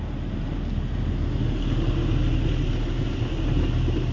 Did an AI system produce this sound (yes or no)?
no